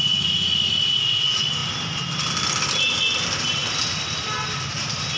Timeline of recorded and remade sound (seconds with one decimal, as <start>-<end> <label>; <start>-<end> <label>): 0.0-5.2 recorded